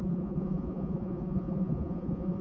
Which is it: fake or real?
fake